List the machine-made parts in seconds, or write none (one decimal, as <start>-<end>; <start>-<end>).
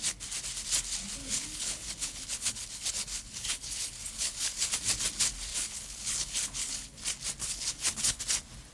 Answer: 1.2-4.7; 5.5-7.0; 7.4-8.2